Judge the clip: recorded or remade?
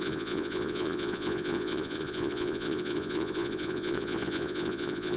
remade